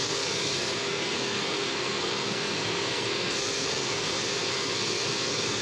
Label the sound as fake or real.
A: fake